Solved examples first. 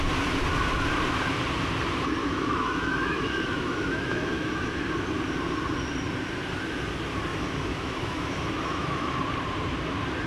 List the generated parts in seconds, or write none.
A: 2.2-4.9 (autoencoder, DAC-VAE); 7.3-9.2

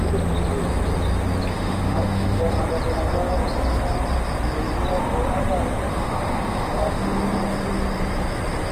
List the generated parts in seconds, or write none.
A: 1.5-2.4 (autoencoder, DAC-VAE); 5.9-7.2

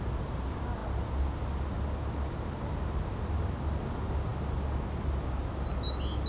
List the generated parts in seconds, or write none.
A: none

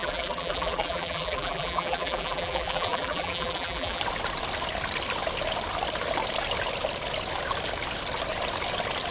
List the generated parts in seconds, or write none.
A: 0.0-4.0 (vocoder, BigVGAN v2)

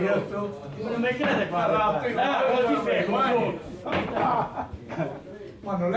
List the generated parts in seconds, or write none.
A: 0.6-1.2 (vocoder, BigVGAN v2); 2.2-4.9

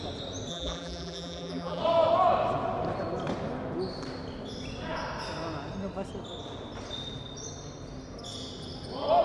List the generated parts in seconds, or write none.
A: 0.5-1.8 (vocoder, BigVGAN v2)

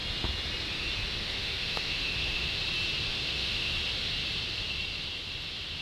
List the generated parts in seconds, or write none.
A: 1.2-2.6 (autoencoder, DAC-VAE); 3.1-3.7

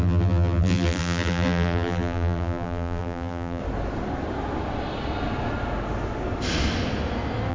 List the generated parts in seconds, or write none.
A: 0.0-3.6 (vocoder, BigVGAN v2)